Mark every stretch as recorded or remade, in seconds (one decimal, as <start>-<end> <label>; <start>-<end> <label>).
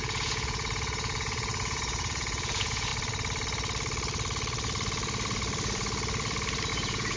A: 0.0-2.9 remade; 2.9-6.7 recorded; 6.7-7.2 remade